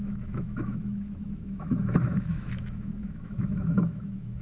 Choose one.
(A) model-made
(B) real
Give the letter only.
A